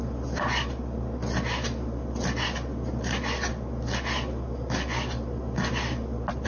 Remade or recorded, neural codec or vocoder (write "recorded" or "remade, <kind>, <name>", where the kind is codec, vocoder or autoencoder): recorded